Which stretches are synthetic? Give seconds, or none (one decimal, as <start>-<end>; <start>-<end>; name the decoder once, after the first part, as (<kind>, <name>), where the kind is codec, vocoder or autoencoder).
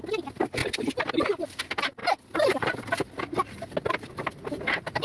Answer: 0.6-1.4 (vocoder, BigVGAN v2)